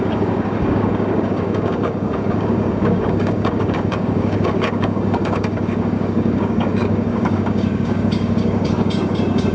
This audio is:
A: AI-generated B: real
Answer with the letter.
A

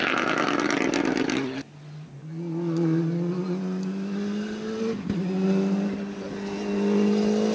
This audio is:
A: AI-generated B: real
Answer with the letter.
B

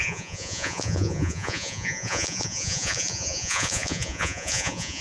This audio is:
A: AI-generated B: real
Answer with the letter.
A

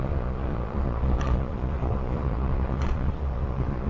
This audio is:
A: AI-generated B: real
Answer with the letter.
A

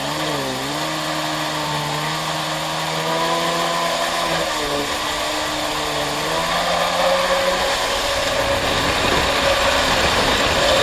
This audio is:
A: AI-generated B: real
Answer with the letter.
B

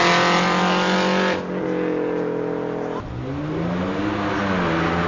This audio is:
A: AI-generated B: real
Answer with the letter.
B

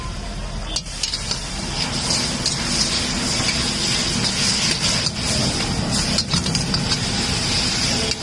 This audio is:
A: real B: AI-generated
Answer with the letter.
A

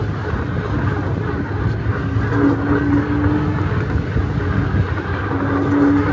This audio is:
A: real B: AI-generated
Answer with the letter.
A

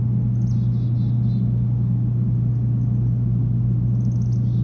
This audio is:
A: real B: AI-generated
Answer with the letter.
A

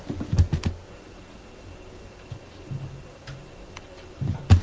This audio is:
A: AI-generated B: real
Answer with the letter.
B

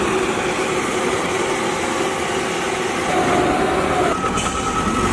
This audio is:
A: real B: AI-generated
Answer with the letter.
A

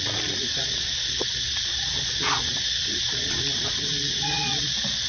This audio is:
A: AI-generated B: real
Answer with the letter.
A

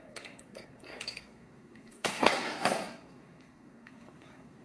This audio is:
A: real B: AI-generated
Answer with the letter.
B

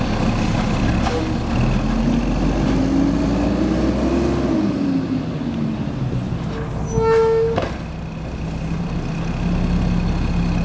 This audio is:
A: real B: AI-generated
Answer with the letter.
A